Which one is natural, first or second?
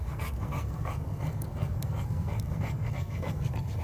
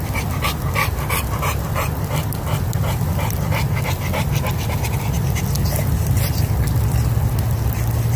second